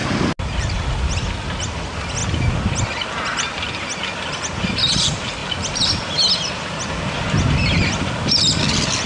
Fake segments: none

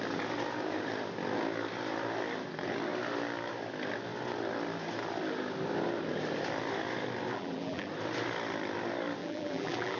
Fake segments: 7.3-7.9; 9.2-10.0

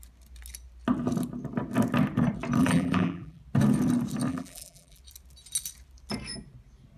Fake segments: 2.6-3.4; 4.3-5.0

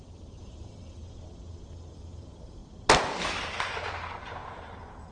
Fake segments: 0.0-1.0; 1.9-2.6; 3.6-5.1

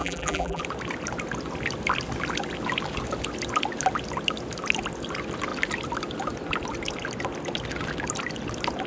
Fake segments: 0.0-0.6

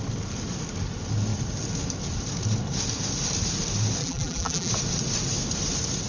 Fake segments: 4.0-4.7

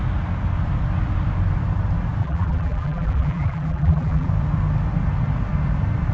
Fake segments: 2.2-4.3

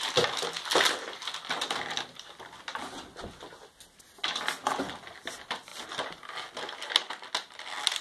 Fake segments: none